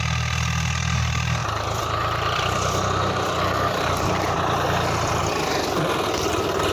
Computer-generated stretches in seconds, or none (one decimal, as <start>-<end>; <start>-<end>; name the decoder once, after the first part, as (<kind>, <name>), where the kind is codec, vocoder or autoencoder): 1.4-5.2 (vocoder, BigVGAN v2)